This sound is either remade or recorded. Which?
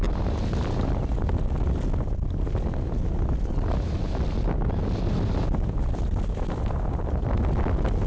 recorded